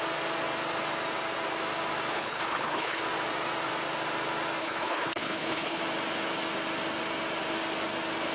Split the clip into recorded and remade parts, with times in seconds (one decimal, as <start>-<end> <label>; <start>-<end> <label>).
0.0-2.1 recorded; 2.1-3.0 remade; 3.0-4.6 recorded; 4.6-5.8 remade; 5.8-8.3 recorded